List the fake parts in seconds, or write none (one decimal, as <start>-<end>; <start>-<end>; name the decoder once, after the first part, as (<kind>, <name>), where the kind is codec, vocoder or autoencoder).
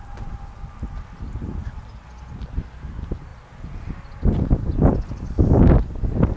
none